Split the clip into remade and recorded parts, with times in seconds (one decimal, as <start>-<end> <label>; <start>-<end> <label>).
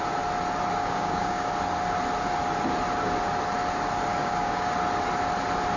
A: 0.0-0.8 recorded; 0.8-1.5 remade; 1.5-4.1 recorded; 4.1-4.7 remade; 4.7-5.8 recorded